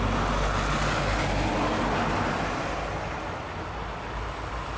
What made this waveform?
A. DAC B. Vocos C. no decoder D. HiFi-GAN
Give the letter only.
C